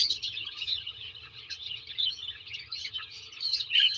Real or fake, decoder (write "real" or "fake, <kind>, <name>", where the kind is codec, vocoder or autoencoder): fake, vocoder, HiFi-GAN